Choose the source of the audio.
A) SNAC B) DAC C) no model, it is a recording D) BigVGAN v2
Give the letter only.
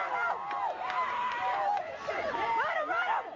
C